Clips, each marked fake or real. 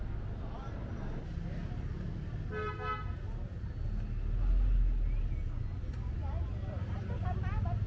real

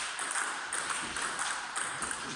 fake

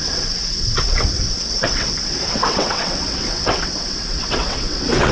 fake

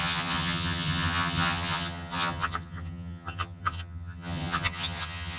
fake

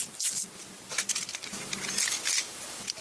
real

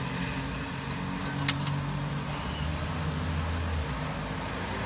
real